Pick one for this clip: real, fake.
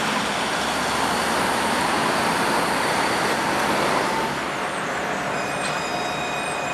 real